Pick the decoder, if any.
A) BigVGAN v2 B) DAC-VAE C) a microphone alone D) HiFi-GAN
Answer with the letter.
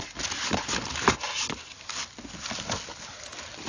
C